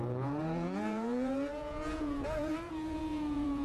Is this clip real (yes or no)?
no